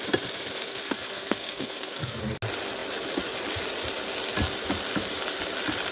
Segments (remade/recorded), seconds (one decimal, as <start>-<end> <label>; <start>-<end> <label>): 0.0-0.7 recorded; 0.7-2.2 remade; 2.2-5.9 recorded